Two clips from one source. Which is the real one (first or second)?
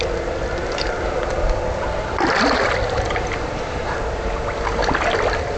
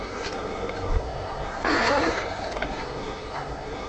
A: first